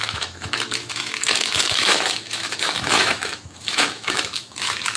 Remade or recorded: remade